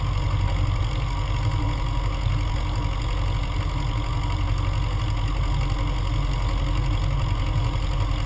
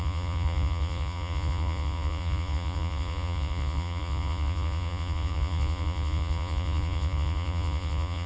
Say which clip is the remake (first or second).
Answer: second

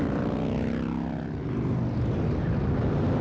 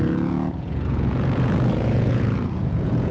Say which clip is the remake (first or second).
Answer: second